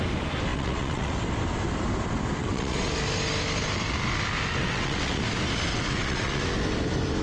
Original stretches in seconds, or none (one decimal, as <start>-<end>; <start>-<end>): 0.0-0.5; 1.2-2.4; 2.9-4.6; 5.2-5.7; 6.4-7.2